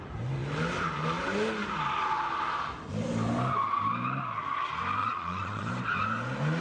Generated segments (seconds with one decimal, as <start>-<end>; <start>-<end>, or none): 5.0-5.7